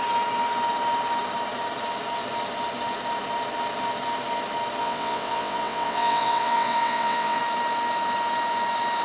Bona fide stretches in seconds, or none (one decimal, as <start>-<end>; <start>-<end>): 0.0-4.8; 7.4-9.0